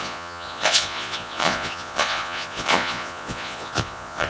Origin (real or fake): fake